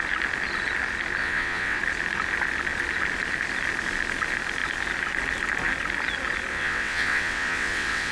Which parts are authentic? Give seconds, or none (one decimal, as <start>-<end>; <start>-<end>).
0.0-1.2; 1.8-6.5